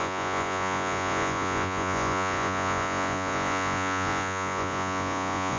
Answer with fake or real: fake